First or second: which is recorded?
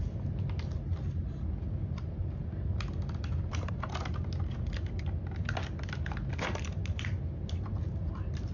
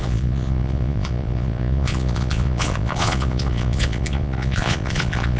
first